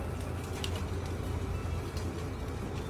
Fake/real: real